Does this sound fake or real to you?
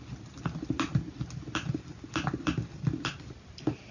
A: real